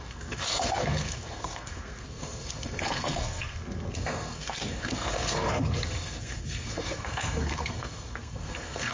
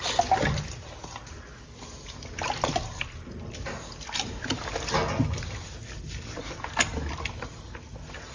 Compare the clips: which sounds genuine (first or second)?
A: second